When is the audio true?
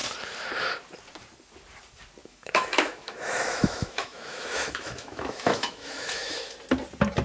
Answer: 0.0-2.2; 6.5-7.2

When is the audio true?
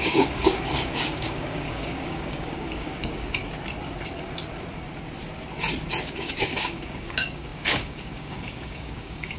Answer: 3.4-6.0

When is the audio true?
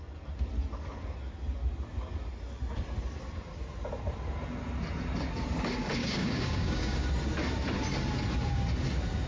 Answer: 0.0-6.0; 7.1-9.3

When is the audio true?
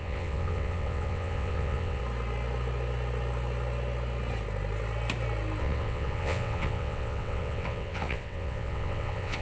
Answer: 2.0-5.6